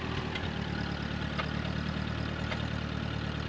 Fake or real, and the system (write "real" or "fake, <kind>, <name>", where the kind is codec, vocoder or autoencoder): real